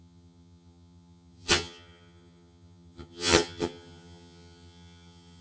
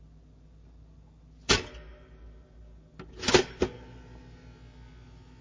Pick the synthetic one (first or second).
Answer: first